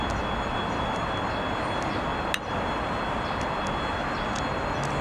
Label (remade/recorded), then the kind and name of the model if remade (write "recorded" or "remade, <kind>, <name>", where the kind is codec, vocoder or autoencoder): recorded